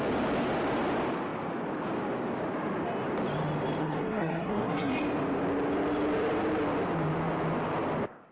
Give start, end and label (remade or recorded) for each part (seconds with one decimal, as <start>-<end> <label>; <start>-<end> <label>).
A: 0.0-3.8 recorded; 3.8-4.9 remade; 4.9-8.3 recorded